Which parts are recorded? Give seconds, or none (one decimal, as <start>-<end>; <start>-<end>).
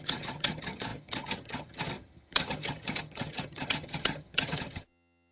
none